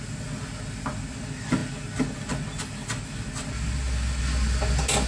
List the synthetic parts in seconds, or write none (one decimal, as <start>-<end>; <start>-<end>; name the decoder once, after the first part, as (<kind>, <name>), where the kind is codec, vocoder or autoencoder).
none